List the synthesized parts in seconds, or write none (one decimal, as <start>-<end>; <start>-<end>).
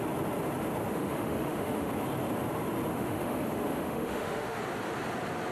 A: 0.9-1.9; 2.9-4.6